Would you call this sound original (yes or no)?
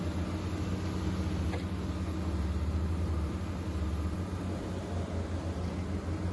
yes